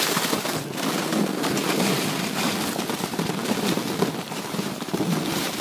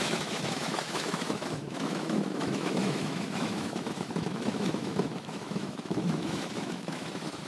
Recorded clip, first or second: first